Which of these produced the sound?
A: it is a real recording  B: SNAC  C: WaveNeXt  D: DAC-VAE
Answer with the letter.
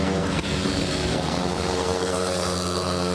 B